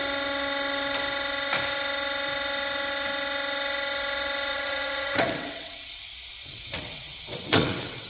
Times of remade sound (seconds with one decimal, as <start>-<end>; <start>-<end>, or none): 4.5-6.0; 6.4-8.1